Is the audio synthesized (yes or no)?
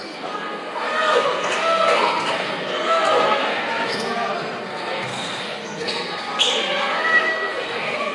yes